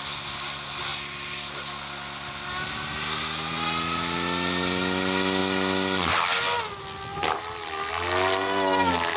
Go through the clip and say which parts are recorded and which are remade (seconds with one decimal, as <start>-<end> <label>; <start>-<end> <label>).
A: 0.0-9.2 recorded